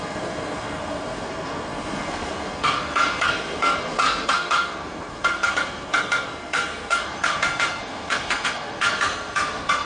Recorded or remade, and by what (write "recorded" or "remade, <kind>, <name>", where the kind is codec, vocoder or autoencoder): remade, codec, SNAC